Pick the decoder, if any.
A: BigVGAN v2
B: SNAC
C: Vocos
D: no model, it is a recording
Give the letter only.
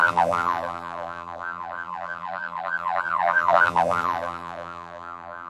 A